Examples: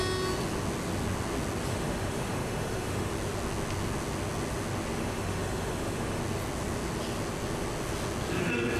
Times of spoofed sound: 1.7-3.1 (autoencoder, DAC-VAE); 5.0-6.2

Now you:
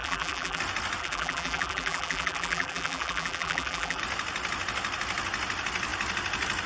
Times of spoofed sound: 0.0-0.6 (vocoder, BigVGAN v2); 1.0-4.0

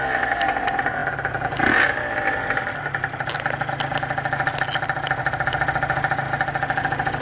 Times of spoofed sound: none

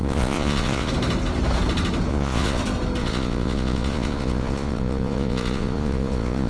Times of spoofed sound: 0.0-0.9 (vocoder, Vocos); 2.1-2.6; 3.0-6.5